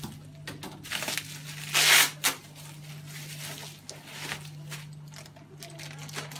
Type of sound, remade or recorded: recorded